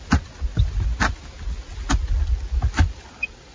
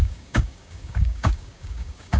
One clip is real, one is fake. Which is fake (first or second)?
second